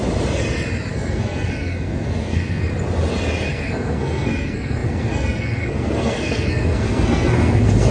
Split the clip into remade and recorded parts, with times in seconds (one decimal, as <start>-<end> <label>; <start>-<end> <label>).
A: 0.0-0.9 recorded; 0.9-2.7 remade; 2.7-3.5 recorded; 3.5-7.9 remade